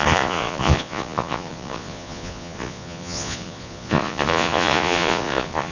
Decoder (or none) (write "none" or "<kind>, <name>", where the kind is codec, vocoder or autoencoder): vocoder, Vocos